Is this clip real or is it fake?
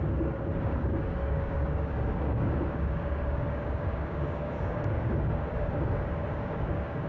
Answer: fake